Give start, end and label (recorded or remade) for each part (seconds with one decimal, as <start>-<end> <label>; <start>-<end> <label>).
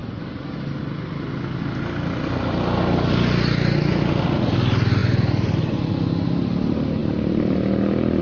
0.0-8.2 recorded